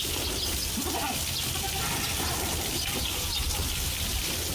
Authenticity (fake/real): real